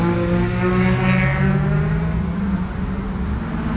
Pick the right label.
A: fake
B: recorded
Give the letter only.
B